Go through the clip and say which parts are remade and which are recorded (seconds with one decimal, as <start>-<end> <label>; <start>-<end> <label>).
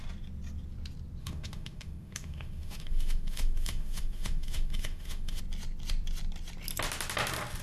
0.0-1.2 recorded; 1.2-5.4 remade; 5.4-7.6 recorded